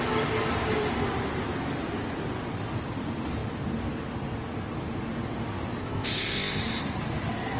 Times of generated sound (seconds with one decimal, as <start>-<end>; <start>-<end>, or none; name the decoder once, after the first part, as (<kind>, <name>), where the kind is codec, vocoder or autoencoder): 5.8-6.6 (codec, ZipCodec)